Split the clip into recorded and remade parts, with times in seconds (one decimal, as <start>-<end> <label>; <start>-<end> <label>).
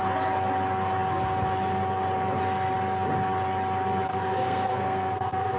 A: 0.0-4.1 recorded; 4.1-5.6 remade